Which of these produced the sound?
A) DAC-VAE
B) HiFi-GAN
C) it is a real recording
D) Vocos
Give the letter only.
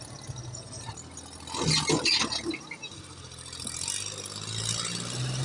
C